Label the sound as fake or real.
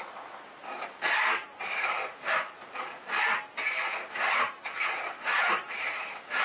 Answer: real